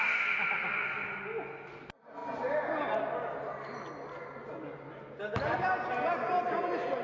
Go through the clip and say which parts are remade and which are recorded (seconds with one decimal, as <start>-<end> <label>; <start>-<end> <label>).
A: 0.0-7.0 recorded